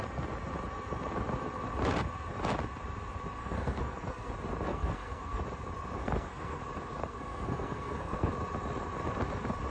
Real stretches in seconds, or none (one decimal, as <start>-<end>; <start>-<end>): 0.0-3.4; 4.3-4.7; 5.4-6.0; 6.6-7.0; 8.3-9.7